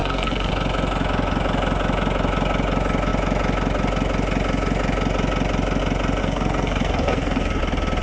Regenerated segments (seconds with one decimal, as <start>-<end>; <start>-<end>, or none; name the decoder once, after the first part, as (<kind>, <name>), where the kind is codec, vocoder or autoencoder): 0.0-0.5 (codec, SNAC); 6.2-7.6